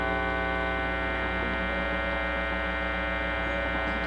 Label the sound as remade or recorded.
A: recorded